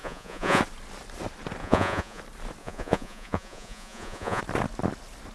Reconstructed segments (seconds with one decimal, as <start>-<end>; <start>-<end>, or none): 0.0-0.6; 1.6-2.2; 2.6-4.4